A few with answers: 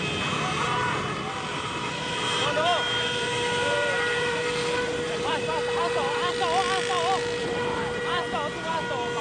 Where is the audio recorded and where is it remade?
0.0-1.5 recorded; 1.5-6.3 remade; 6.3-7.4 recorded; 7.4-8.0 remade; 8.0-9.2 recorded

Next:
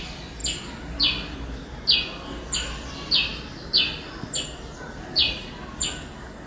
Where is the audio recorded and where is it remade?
0.0-6.5 recorded

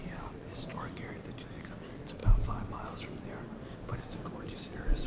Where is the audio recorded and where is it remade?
0.0-3.9 remade; 3.9-4.4 recorded; 4.4-5.1 remade

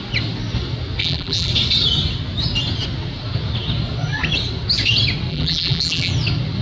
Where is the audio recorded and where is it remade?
0.0-1.0 recorded; 1.0-1.5 remade; 1.5-5.3 recorded; 5.3-6.1 remade; 6.1-6.6 recorded

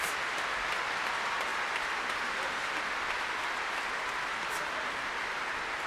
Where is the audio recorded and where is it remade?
0.0-5.9 recorded

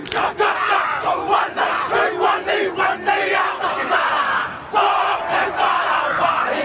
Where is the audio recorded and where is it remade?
0.0-6.6 recorded